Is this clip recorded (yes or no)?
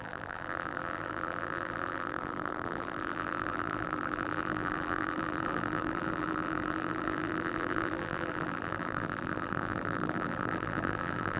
no